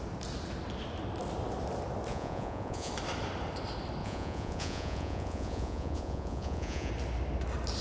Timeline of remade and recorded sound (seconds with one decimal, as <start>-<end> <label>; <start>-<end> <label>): 0.0-2.1 recorded; 2.1-2.9 remade; 2.9-4.0 recorded; 4.0-6.9 remade; 6.9-7.8 recorded